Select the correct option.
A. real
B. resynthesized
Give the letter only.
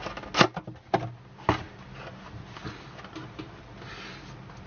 A